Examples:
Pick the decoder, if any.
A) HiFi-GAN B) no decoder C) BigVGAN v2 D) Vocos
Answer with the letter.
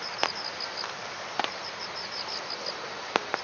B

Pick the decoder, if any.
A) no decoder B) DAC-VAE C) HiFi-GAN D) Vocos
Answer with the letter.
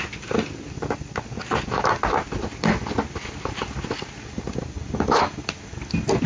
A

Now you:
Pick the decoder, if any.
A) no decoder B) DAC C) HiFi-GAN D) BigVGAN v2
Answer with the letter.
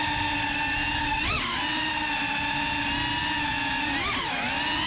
A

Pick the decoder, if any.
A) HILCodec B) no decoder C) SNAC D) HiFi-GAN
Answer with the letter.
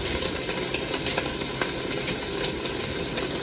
B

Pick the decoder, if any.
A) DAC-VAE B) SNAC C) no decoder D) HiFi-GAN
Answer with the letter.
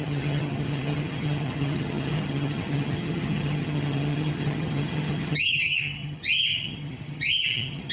D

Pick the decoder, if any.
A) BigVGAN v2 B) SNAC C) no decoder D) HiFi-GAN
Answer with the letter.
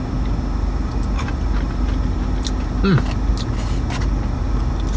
C